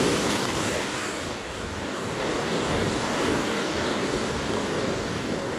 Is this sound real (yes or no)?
no